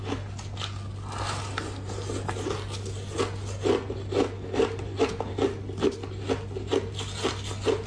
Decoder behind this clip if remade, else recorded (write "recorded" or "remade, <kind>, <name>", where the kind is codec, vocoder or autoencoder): recorded